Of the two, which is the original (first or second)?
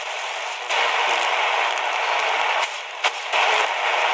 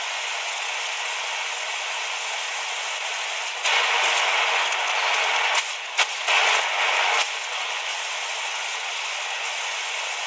first